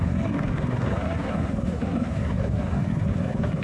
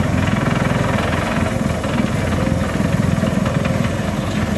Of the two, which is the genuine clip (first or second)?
second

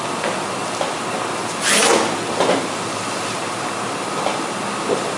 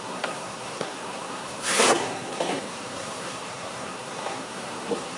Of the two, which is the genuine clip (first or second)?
first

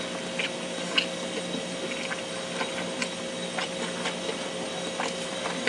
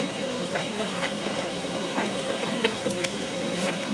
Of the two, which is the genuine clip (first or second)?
first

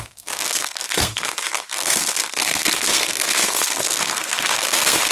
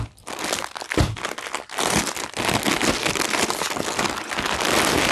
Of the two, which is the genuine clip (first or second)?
second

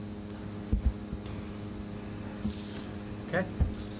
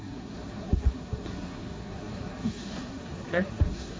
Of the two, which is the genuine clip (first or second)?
first